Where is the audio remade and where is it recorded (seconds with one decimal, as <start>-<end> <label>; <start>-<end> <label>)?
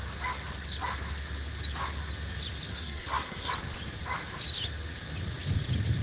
0.0-2.7 recorded; 2.7-3.5 remade; 3.5-6.0 recorded